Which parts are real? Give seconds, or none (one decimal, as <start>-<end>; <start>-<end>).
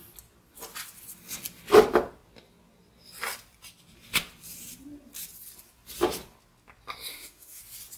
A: 0.0-7.1; 7.6-8.0